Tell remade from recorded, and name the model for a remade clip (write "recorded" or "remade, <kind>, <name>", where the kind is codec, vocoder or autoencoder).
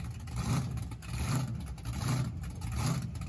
recorded